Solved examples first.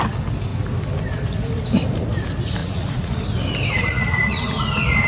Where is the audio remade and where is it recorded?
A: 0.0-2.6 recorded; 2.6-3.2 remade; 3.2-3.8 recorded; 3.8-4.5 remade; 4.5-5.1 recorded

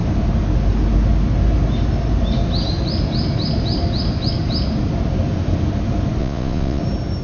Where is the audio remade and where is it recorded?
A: 0.0-6.2 recorded; 6.2-6.8 remade; 6.8-7.2 recorded

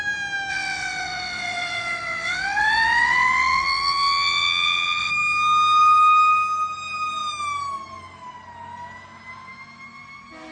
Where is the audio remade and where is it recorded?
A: 0.0-0.5 recorded; 0.5-5.1 remade; 5.1-10.5 recorded

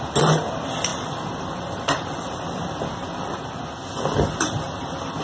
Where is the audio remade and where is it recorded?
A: 0.0-0.9 recorded; 0.9-3.4 remade; 3.4-5.2 recorded

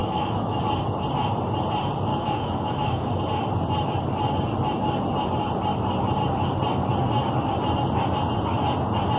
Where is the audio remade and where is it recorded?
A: 0.0-0.6 remade; 0.6-2.1 recorded; 2.1-3.2 remade; 3.2-9.2 recorded